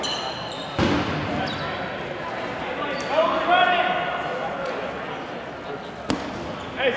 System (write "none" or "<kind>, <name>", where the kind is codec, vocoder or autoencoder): none